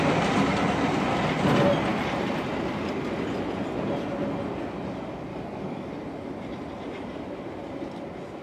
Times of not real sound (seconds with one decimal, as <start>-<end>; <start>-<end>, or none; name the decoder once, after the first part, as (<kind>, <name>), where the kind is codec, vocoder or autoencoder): 5.3-5.9 (codec, DAC)